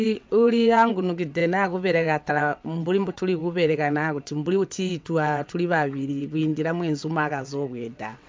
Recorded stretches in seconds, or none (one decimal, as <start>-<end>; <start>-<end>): none